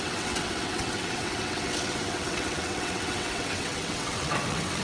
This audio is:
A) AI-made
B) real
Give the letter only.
A